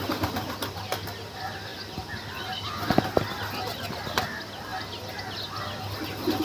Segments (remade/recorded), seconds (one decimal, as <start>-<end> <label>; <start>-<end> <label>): 0.0-6.4 recorded